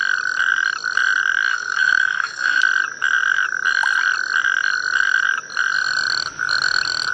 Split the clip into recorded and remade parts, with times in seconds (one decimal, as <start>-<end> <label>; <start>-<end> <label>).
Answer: 0.0-1.5 recorded; 1.5-2.6 remade; 2.6-7.1 recorded